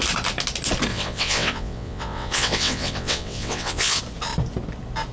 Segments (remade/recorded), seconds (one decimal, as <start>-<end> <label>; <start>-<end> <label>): 0.0-0.9 recorded; 0.9-4.0 remade; 4.0-5.1 recorded